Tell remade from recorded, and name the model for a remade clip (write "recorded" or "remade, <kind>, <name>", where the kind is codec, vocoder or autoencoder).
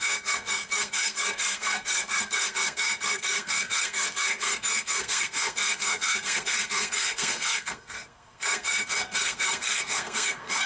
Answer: remade, codec, SNAC